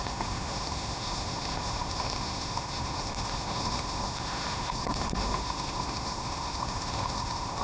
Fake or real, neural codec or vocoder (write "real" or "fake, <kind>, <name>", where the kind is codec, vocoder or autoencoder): fake, autoencoder, DAC-VAE